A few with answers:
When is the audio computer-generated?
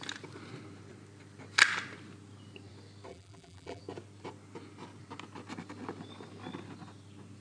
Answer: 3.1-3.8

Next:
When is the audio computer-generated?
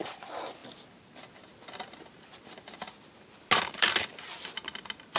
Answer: none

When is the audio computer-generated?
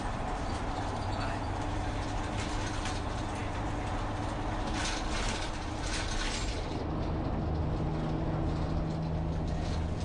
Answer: none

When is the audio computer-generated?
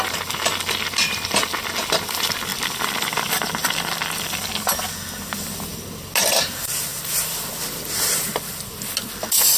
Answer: 2.5-4.5; 6.9-7.5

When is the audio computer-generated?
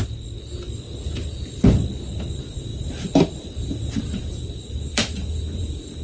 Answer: 2.3-6.0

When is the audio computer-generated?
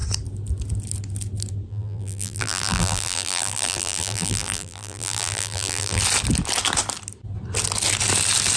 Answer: 1.7-6.0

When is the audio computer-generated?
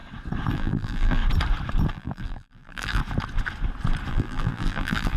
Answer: 0.5-1.2; 1.9-3.0; 4.1-5.2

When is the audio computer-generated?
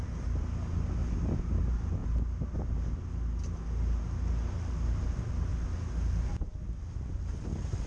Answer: 0.0-1.0; 1.6-2.0; 4.3-5.5; 6.8-7.9